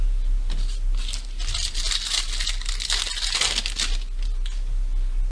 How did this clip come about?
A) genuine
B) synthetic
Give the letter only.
A